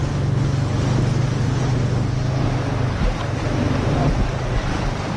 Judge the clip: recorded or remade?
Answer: recorded